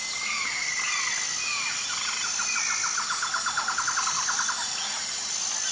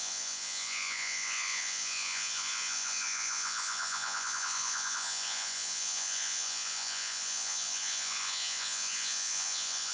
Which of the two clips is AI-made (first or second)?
second